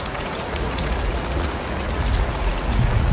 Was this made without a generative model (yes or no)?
no